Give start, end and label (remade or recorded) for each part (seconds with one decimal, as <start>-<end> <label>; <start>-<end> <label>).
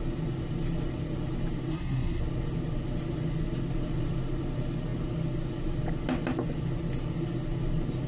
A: 0.0-1.7 recorded; 1.7-2.2 remade; 2.2-8.1 recorded